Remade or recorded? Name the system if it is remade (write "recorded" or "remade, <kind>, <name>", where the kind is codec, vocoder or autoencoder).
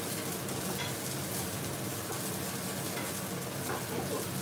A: recorded